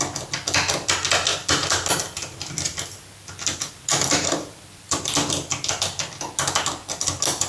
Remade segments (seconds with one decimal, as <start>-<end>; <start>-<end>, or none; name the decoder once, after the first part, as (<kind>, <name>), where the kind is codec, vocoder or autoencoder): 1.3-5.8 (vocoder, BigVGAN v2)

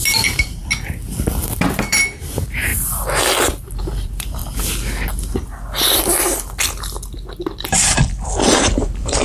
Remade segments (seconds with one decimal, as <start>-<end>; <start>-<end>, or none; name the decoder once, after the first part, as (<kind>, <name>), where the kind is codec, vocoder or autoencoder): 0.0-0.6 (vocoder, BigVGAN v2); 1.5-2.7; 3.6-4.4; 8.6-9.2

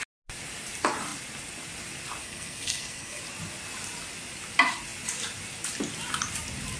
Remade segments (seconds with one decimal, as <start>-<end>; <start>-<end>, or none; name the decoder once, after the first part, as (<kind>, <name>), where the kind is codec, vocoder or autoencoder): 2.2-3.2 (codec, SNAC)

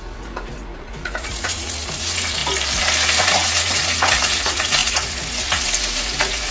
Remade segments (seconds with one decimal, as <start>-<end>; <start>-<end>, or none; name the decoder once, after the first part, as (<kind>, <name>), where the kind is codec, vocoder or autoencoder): 0.0-2.4 (vocoder, Vocos); 3.2-6.5